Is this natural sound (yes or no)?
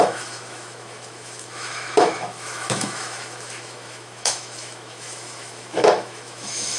no